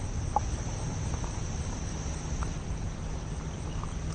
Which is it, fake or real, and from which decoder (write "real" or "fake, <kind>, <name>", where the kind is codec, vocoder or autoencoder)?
real